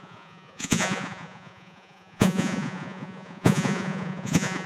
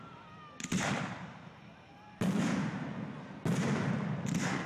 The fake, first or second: first